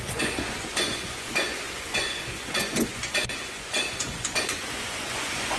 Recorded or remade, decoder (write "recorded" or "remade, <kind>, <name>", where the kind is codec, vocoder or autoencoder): remade, vocoder, Vocos